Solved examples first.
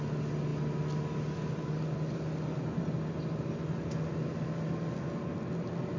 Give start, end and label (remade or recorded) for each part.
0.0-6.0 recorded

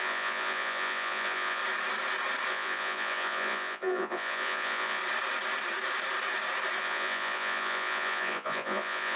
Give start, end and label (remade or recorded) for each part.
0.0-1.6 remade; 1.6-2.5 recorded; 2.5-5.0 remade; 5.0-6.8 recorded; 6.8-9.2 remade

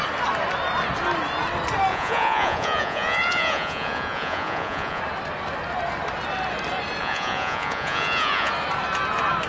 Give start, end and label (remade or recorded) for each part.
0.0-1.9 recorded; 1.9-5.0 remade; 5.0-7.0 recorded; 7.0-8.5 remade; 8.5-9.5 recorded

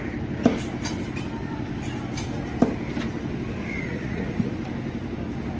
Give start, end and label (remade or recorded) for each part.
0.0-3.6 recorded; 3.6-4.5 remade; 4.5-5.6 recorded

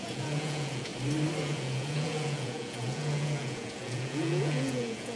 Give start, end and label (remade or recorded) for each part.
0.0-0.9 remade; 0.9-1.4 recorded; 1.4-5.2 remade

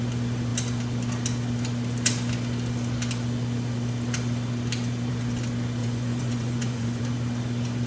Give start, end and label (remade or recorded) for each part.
0.0-5.8 recorded; 5.8-7.0 remade; 7.0-7.9 recorded

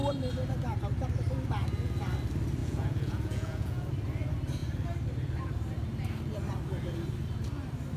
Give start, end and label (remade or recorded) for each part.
0.0-2.6 recorded; 2.6-3.9 remade; 3.9-8.0 recorded